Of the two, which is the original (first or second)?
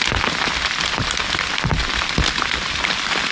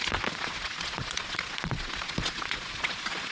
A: first